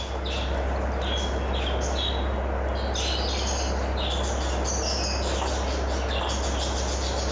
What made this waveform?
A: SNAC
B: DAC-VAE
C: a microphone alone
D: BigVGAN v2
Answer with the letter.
C